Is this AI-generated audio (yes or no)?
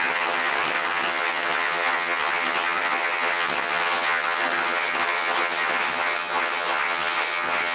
yes